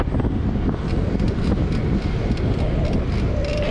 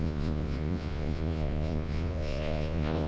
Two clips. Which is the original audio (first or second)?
first